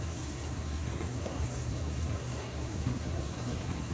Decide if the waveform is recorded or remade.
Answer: remade